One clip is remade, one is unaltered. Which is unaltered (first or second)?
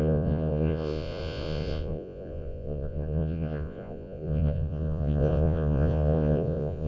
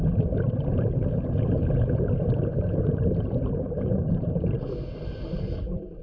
second